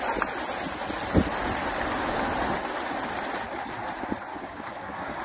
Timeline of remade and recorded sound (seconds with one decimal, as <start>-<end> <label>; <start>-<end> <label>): 0.0-4.3 recorded; 4.3-5.2 remade